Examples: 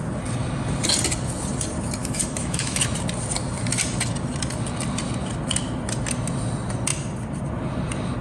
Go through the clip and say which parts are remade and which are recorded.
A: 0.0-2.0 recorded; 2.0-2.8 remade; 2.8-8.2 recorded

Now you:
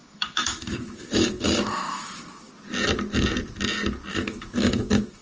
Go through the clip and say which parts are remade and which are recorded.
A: 0.0-2.5 remade; 2.5-4.1 recorded; 4.1-5.2 remade

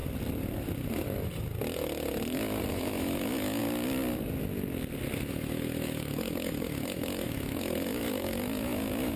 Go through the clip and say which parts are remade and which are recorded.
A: 0.0-2.7 recorded; 2.7-3.6 remade; 3.6-5.3 recorded; 5.3-9.2 remade

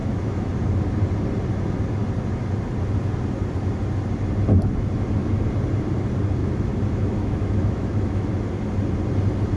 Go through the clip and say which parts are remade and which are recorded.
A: 0.0-0.5 remade; 0.5-6.4 recorded; 6.4-8.3 remade; 8.3-9.6 recorded

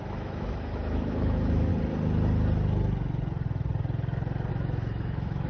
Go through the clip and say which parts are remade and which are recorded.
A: 0.0-1.7 remade; 1.7-4.5 recorded; 4.5-5.5 remade

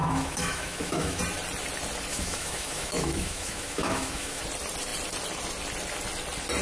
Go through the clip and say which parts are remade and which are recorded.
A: 0.0-1.2 remade; 1.2-2.1 recorded; 2.1-4.4 remade; 4.4-6.6 recorded